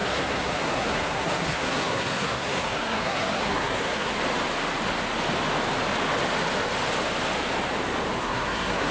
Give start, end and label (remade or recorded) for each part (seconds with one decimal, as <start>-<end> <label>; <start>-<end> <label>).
0.0-4.1 remade; 4.1-8.2 recorded; 8.2-8.9 remade